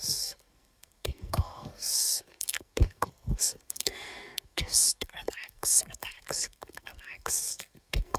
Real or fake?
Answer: fake